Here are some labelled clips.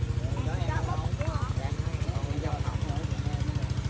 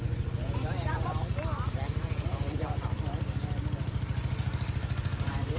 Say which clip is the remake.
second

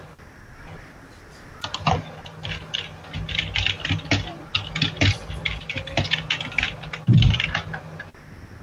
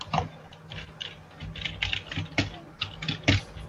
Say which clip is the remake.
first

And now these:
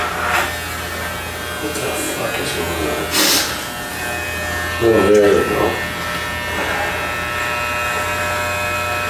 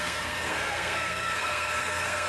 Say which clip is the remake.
second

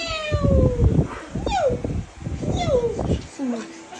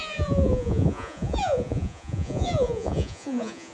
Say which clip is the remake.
second